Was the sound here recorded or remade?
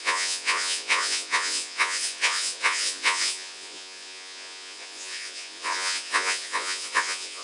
remade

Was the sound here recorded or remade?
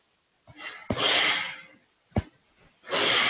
recorded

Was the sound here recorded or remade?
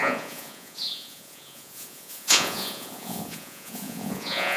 remade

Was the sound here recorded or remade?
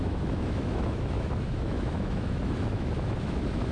remade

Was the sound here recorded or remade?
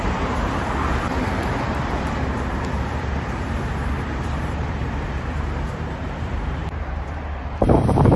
remade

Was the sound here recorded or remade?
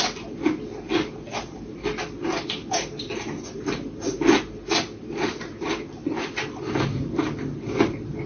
recorded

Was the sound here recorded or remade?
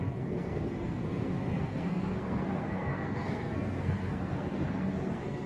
remade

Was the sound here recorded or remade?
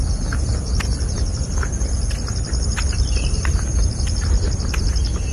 recorded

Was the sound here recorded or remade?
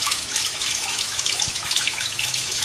remade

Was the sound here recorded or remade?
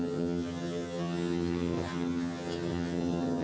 remade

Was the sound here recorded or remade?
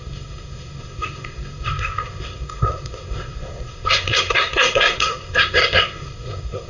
remade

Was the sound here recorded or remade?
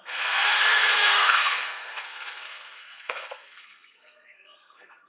remade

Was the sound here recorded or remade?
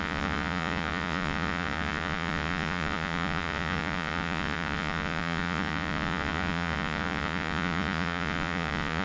remade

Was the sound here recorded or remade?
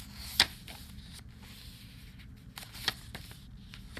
recorded